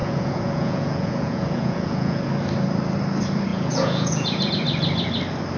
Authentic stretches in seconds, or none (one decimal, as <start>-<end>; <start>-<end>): 2.2-3.5; 4.5-5.6